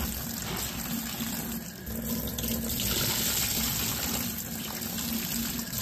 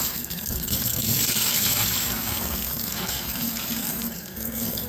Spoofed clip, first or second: second